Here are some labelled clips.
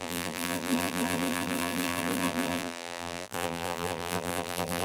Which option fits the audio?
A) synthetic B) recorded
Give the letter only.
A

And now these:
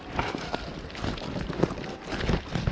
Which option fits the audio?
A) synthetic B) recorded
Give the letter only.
B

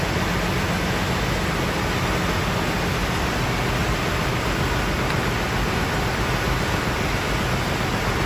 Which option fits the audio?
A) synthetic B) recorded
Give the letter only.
B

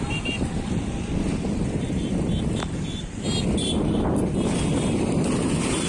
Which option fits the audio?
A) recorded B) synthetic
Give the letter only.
B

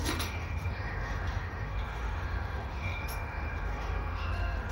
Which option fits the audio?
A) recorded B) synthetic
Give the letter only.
B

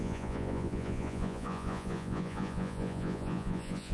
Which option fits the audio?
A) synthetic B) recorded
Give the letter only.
A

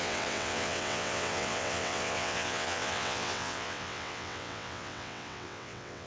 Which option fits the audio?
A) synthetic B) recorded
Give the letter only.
A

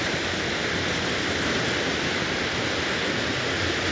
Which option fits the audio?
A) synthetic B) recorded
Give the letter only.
B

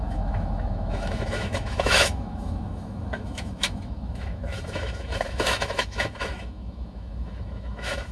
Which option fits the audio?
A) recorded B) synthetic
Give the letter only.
B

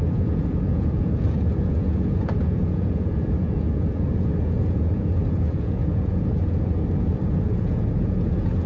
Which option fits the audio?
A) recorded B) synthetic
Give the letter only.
B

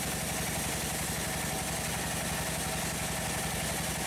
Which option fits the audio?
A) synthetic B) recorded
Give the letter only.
B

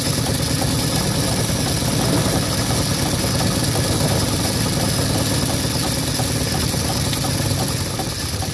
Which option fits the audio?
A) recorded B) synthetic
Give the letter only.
A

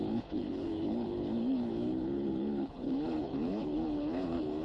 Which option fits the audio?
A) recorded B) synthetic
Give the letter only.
B